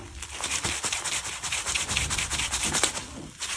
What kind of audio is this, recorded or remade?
remade